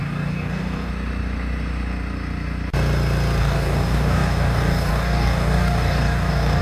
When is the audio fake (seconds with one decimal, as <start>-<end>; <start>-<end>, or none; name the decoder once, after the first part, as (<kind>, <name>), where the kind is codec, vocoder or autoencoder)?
0.0-0.9 (codec, DAC); 3.4-6.6